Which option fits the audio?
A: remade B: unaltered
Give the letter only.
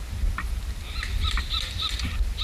B